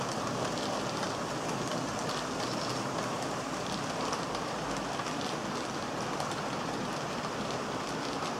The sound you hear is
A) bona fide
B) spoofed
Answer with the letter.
A